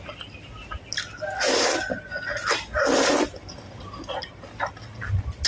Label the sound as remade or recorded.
recorded